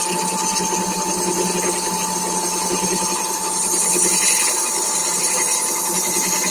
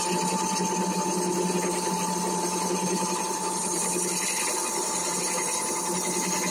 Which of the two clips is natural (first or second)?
first